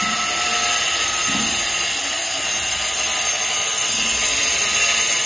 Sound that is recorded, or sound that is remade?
recorded